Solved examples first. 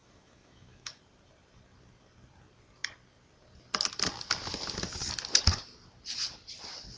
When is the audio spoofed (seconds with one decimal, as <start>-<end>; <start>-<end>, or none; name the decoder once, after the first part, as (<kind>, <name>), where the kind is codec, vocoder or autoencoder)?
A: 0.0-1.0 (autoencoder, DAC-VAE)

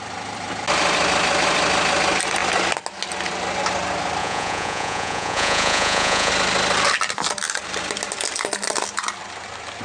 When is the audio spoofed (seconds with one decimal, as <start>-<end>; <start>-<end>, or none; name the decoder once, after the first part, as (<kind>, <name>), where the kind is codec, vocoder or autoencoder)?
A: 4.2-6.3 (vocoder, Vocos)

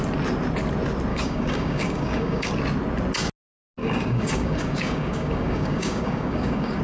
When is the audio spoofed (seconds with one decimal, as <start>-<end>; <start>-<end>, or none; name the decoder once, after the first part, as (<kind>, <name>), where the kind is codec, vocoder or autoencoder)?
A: 1.1-2.5 (codec, DAC); 3.8-6.8

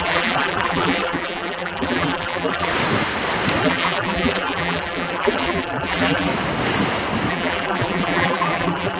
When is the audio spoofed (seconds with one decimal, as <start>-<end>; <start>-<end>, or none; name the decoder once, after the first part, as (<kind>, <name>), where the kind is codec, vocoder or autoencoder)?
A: 0.0-2.7 (vocoder, BigVGAN v2); 3.6-6.3; 7.3-9.0

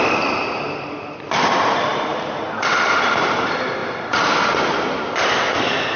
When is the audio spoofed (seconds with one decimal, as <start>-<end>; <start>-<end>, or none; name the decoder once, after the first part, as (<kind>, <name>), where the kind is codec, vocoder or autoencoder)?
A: 1.9-2.7 (vocoder, BigVGAN v2); 3.8-4.3

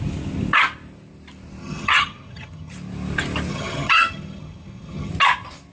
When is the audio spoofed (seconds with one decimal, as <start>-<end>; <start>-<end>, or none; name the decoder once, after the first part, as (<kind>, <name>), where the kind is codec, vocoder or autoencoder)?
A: 1.6-2.7 (vocoder, HiFi-GAN); 3.5-5.1

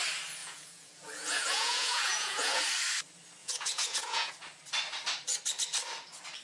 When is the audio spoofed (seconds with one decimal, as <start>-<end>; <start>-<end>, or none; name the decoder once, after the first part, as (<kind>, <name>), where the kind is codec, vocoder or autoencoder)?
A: 0.4-2.6 (vocoder, Vocos); 3.4-4.3

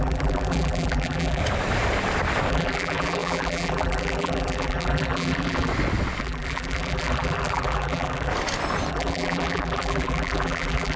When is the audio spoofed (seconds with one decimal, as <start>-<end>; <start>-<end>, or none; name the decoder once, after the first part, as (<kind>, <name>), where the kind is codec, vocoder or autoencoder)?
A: 0.0-1.4 (vocoder, BigVGAN v2); 2.5-5.7; 6.2-8.3; 8.9-11.0